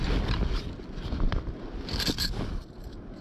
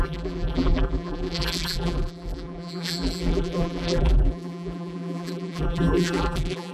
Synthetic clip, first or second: second